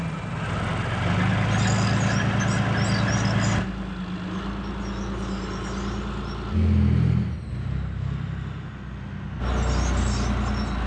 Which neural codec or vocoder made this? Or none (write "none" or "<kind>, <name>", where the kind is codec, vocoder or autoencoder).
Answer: none